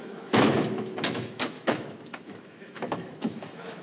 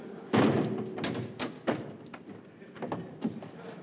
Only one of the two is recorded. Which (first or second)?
second